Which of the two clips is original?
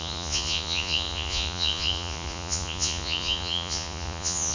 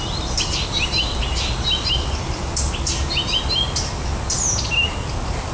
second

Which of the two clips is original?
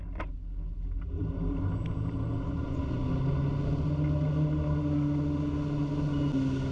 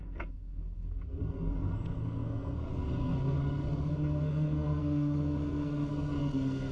first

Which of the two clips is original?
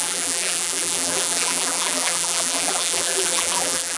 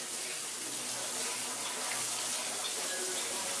second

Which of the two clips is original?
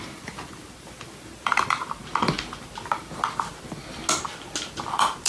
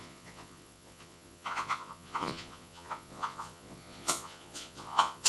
first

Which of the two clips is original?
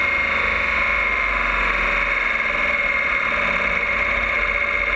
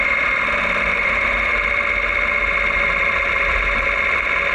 first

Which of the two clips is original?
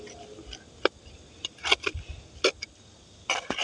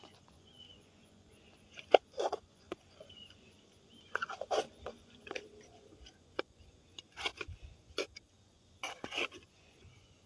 first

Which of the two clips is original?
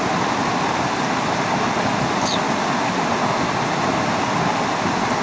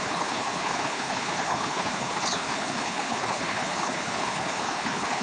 first